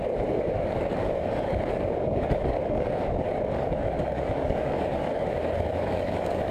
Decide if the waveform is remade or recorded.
remade